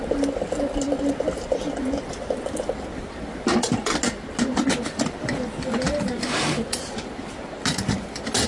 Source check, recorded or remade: recorded